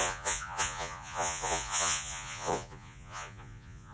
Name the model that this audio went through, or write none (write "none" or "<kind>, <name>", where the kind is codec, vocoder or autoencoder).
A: vocoder, Vocos